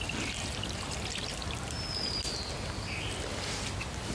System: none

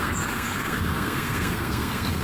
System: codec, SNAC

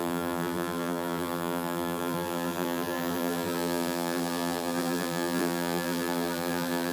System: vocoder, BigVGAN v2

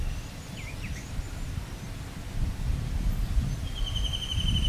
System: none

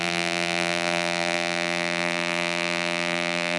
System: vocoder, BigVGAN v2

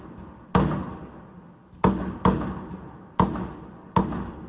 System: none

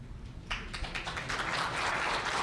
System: none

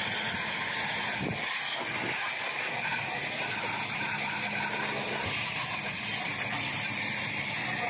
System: none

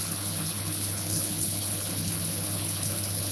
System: codec, HILCodec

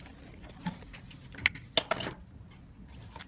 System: none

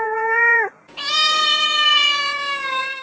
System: vocoder, Vocos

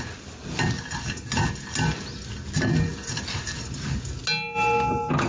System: none